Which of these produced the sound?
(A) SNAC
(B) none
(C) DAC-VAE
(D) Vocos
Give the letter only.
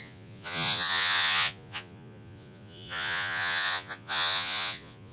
D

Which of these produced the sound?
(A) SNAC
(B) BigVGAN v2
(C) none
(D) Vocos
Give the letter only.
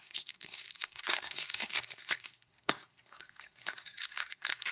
A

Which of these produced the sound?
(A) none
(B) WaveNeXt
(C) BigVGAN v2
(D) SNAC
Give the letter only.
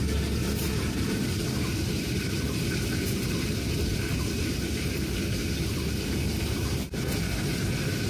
C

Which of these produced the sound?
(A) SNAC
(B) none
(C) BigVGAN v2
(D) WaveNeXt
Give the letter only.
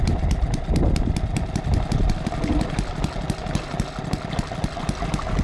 B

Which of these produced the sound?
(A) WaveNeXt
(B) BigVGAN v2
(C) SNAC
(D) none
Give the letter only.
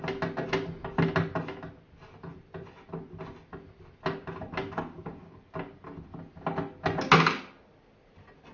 D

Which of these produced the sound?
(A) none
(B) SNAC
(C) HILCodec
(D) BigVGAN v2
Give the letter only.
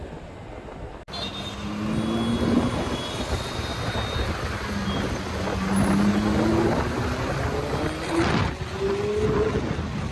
A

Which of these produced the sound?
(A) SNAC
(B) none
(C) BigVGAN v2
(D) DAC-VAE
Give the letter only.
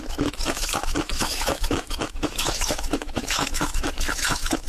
D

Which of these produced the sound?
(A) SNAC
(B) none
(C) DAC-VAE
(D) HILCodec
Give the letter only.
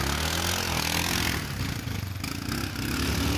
B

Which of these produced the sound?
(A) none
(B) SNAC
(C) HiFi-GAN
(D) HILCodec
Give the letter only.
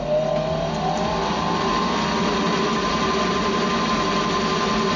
A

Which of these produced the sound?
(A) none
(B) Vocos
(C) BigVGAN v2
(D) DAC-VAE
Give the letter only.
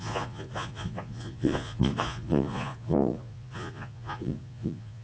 B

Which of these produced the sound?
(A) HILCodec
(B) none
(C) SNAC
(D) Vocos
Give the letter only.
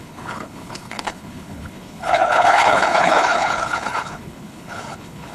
A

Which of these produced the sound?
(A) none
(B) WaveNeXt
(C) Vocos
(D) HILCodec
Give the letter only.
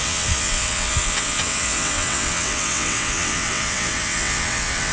B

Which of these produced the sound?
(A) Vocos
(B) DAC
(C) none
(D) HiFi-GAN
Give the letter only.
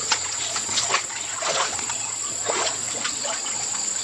A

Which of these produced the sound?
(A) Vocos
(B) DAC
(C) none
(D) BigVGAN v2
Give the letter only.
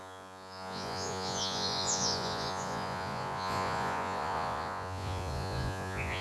A